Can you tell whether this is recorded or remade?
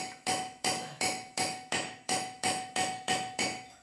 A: remade